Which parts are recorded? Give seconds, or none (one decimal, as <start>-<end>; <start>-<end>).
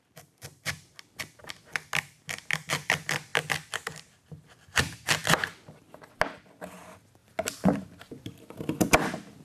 0.0-9.4